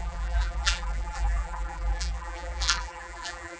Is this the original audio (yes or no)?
no